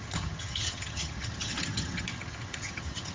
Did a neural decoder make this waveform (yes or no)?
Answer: yes